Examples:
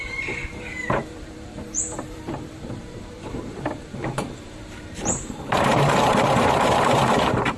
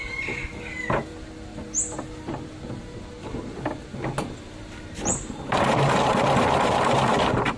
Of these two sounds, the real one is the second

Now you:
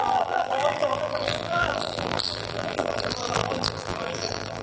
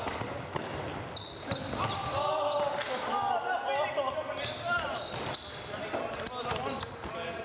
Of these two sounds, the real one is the second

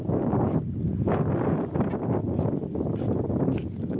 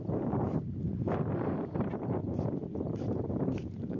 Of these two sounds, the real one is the first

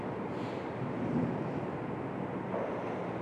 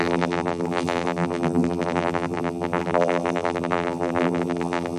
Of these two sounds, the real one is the first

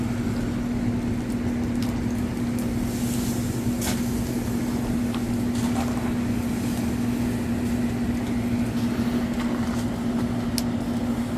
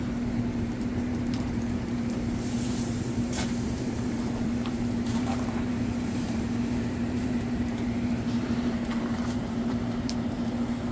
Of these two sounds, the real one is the first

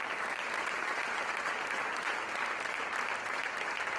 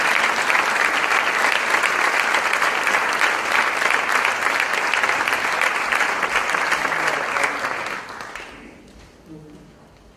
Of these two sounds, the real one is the second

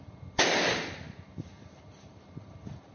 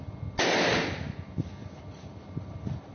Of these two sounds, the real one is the second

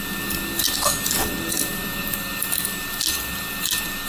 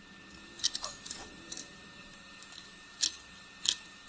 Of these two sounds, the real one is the first